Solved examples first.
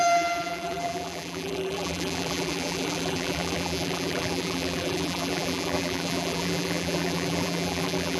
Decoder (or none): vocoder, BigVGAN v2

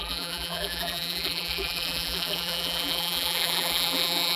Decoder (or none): vocoder, BigVGAN v2